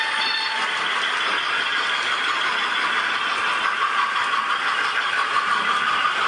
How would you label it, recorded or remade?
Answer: remade